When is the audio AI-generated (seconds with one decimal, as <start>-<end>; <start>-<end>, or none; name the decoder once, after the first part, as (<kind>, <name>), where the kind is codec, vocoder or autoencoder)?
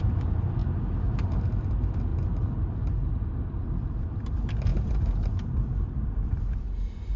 0.0-0.6 (vocoder, BigVGAN v2); 1.6-2.1; 4.1-4.7; 5.5-7.2